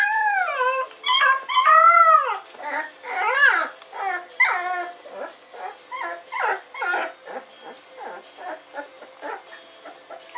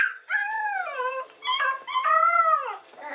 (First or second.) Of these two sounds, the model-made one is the second